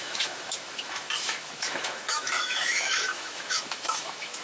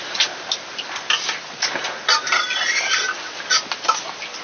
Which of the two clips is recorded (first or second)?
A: second